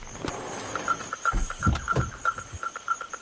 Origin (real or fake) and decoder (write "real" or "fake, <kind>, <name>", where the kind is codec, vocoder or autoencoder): real